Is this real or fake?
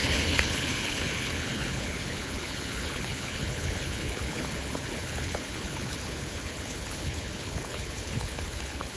fake